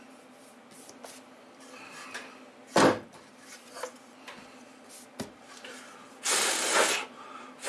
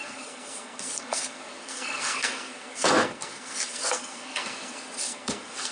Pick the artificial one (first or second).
second